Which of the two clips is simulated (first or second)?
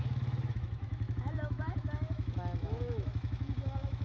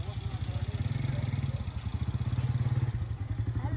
first